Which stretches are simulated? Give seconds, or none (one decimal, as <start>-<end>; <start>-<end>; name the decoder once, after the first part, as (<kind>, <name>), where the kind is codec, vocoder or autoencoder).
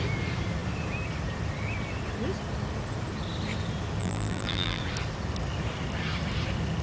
4.0-4.8 (vocoder, BigVGAN v2)